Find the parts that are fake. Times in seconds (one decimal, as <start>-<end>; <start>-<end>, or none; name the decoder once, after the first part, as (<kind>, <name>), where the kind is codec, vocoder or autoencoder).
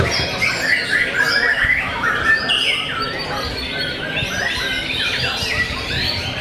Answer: 1.5-2.1 (autoencoder, DAC-VAE)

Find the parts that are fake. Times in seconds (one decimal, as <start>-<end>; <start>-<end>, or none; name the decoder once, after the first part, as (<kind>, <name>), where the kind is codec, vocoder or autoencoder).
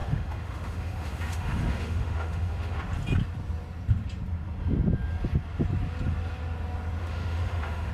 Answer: 0.0-2.8 (autoencoder, DAC-VAE); 7.0-7.9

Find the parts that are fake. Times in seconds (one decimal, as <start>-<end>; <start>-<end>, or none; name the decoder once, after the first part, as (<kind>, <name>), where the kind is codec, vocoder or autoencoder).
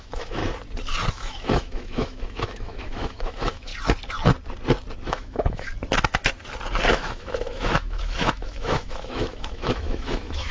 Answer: 0.0-0.4 (autoencoder, DAC-VAE); 1.1-3.7; 5.1-5.7; 6.9-10.5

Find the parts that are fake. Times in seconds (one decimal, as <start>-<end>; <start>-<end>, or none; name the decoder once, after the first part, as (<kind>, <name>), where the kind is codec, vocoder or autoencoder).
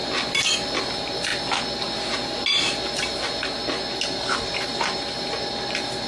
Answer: none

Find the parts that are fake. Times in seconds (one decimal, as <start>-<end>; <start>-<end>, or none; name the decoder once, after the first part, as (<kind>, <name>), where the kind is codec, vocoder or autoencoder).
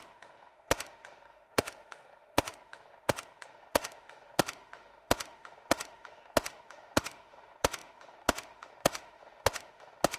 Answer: 0.0-10.2 (autoencoder, DAC-VAE)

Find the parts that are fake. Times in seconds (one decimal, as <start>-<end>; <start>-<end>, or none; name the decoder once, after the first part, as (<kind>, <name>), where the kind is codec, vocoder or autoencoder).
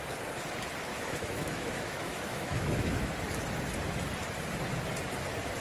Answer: 0.9-3.1 (autoencoder, DAC-VAE)